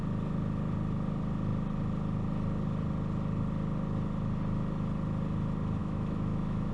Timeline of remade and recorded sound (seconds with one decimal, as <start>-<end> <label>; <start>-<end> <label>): 0.0-5.8 recorded; 5.8-6.7 remade